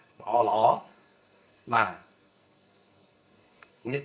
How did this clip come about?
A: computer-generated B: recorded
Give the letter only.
A